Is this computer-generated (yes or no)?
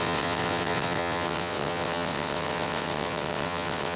yes